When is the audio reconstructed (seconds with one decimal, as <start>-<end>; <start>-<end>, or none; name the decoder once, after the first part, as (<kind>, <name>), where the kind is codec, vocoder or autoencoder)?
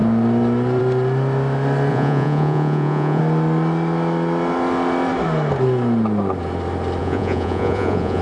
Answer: 1.9-3.2 (vocoder, Vocos); 7.0-8.2